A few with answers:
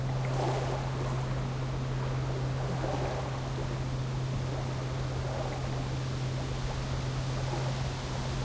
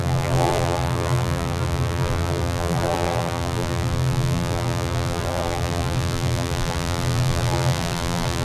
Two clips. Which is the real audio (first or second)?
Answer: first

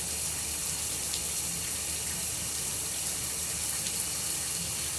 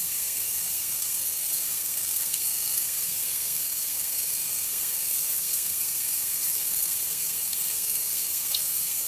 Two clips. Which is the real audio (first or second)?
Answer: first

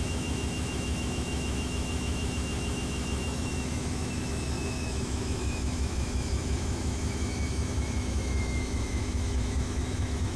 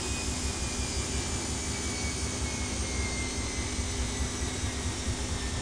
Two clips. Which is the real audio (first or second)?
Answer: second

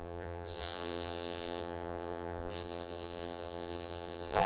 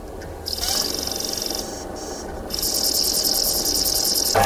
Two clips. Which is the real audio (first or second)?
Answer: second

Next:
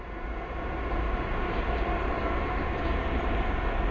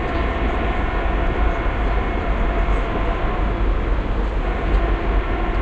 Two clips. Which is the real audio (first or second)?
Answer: second